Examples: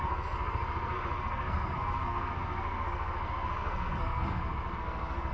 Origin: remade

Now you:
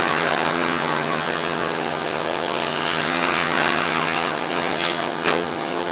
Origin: remade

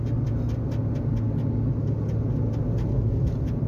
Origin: recorded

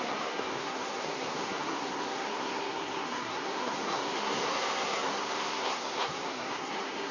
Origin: remade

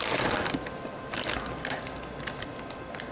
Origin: recorded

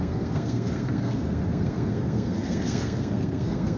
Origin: remade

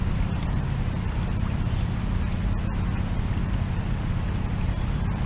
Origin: remade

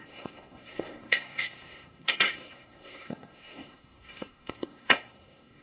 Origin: remade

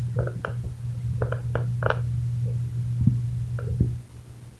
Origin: recorded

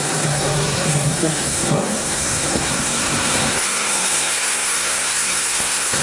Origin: remade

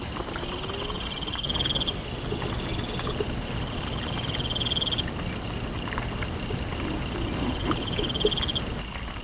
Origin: recorded